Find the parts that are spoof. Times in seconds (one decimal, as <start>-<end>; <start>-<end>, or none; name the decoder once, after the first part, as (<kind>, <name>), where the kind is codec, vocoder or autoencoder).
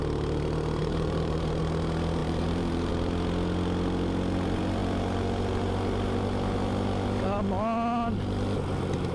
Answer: 0.8-1.6 (vocoder, BigVGAN v2); 2.2-2.9